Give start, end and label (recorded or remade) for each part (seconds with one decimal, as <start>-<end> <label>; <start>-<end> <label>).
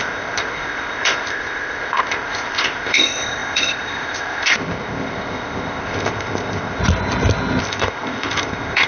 0.0-6.8 remade; 6.8-7.6 recorded; 7.6-8.9 remade